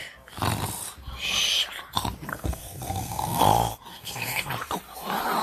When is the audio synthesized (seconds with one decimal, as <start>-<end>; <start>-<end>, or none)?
2.3-3.4; 3.9-4.5